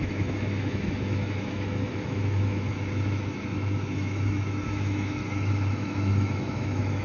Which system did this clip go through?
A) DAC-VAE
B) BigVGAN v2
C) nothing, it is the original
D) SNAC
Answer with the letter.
A